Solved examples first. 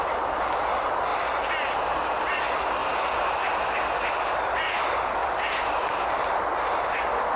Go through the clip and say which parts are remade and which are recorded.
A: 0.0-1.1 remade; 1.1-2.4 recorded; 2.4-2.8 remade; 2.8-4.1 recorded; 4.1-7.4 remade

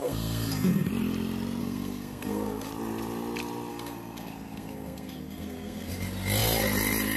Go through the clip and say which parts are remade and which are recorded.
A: 0.0-0.9 remade; 0.9-1.6 recorded; 1.6-2.7 remade; 2.7-3.7 recorded; 3.7-5.9 remade; 5.9-7.2 recorded

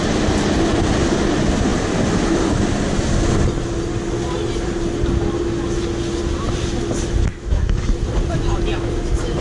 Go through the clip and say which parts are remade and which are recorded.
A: 0.0-7.3 recorded; 7.3-7.8 remade; 7.8-9.4 recorded

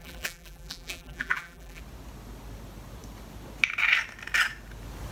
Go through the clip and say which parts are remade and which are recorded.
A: 0.0-1.8 remade; 1.8-5.1 recorded

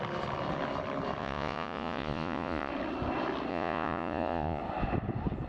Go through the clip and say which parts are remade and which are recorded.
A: 0.0-1.2 recorded; 1.2-2.7 remade; 2.7-3.5 recorded; 3.5-4.6 remade; 4.6-5.5 recorded

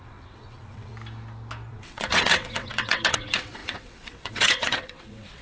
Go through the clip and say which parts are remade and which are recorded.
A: 0.0-0.9 remade; 0.9-1.7 recorded; 1.7-5.4 remade